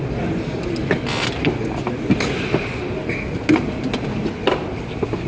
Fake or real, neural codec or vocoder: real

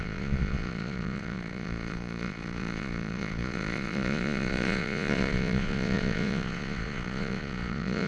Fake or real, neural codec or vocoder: fake, vocoder, Vocos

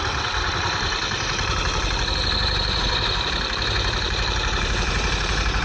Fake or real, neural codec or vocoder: fake, vocoder, BigVGAN v2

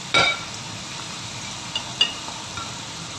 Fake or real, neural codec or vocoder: real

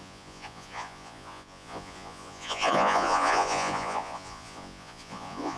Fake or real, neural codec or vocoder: fake, vocoder, Vocos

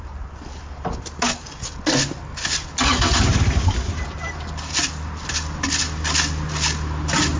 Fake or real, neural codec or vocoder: real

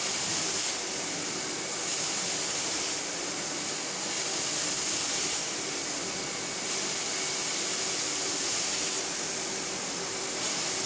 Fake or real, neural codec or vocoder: real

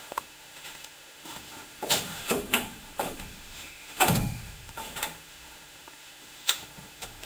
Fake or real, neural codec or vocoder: fake, autoencoder, DAC-VAE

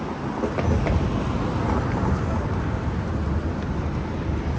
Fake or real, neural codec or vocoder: real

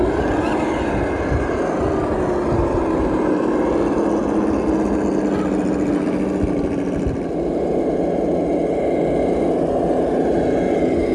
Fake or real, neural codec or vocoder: real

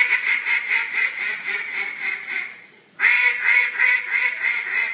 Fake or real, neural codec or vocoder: fake, vocoder, Vocos